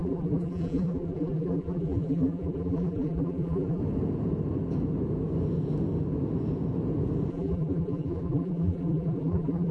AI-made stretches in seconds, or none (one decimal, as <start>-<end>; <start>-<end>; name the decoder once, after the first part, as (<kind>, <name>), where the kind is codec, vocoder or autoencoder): 0.0-3.8 (vocoder, BigVGAN v2); 7.3-9.7